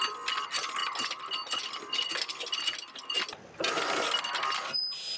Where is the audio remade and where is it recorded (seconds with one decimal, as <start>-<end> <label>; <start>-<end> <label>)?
0.0-5.2 recorded